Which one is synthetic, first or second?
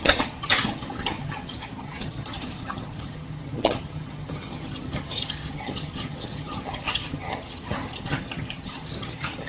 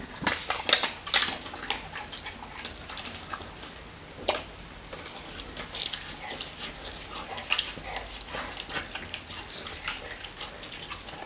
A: first